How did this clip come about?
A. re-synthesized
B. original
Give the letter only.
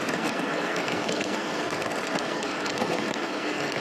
A